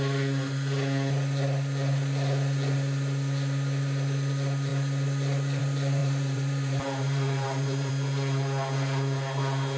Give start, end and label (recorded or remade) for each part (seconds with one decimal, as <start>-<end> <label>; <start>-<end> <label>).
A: 0.0-6.0 recorded; 6.0-7.9 remade; 7.9-9.8 recorded